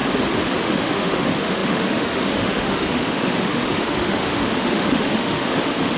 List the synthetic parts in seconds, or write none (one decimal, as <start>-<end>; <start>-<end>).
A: 0.6-6.0